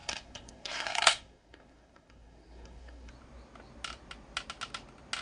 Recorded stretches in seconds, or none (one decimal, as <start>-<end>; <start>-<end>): 3.1-5.2